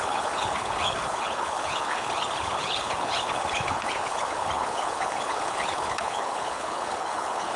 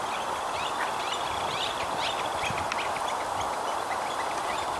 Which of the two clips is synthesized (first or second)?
first